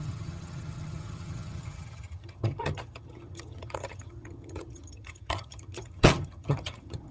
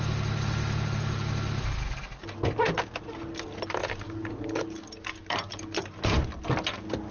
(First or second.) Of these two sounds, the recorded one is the second